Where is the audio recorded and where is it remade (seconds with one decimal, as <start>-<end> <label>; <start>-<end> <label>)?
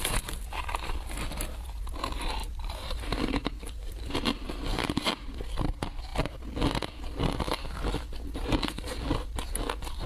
0.0-2.4 recorded; 2.4-4.1 remade; 4.1-4.7 recorded; 4.7-5.3 remade; 5.3-10.1 recorded